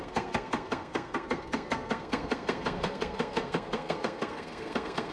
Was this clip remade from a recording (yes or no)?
yes